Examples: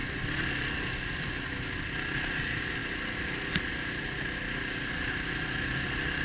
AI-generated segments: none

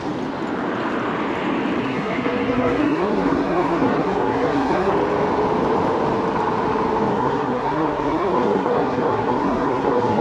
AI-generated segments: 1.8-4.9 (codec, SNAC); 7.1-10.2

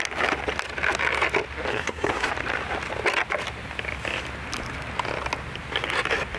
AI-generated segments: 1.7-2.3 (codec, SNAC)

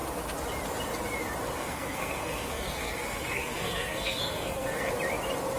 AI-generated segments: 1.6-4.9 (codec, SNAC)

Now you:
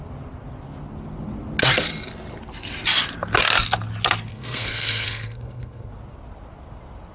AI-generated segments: 4.3-5.9 (codec, SNAC)

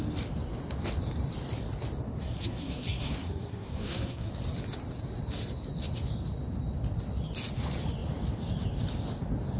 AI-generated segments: 2.2-4.3 (codec, SNAC)

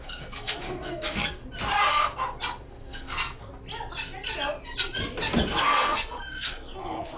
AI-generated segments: 0.0-1.4 (codec, SNAC); 2.7-3.5; 5.6-7.2